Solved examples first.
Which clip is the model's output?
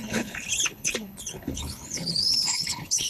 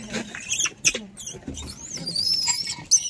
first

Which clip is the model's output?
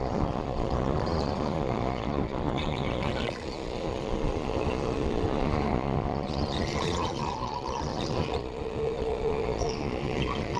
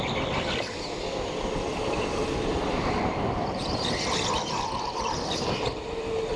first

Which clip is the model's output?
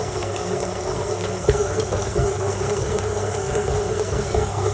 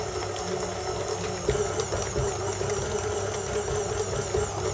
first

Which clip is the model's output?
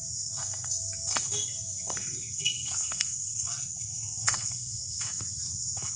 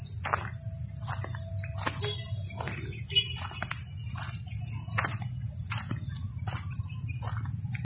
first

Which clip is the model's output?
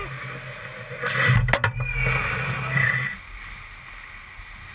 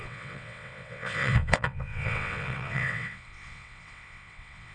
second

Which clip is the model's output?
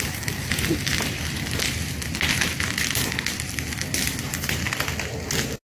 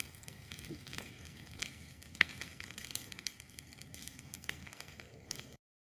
second